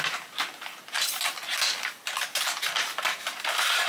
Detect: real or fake real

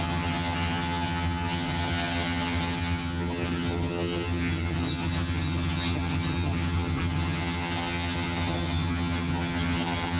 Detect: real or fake fake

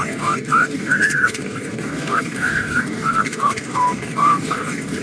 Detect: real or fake fake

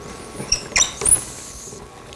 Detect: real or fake real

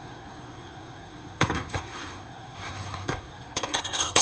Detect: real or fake fake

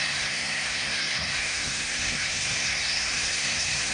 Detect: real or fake fake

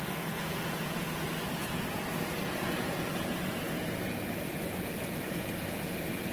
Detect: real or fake fake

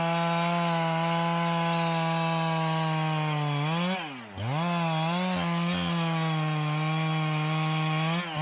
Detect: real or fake real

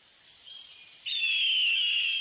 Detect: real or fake real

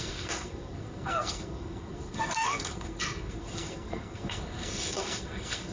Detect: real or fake fake